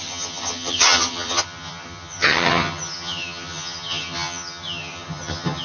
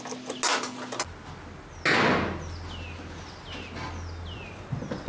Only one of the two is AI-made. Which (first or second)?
first